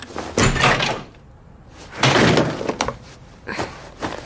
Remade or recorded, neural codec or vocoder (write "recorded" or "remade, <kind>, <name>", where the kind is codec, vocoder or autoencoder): recorded